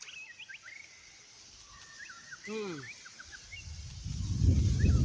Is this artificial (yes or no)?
no